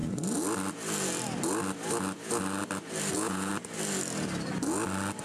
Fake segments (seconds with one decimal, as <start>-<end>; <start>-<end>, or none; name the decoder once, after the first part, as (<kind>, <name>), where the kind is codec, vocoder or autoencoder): 3.1-3.5 (vocoder, Vocos)